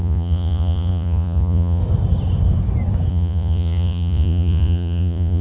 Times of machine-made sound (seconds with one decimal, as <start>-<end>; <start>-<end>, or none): 0.0-1.8; 3.1-5.4